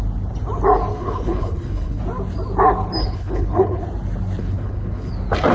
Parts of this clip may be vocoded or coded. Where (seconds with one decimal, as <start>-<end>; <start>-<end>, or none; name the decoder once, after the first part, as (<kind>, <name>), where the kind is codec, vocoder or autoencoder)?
0.9-2.0 (codec, HILCodec); 3.0-3.8; 4.4-5.1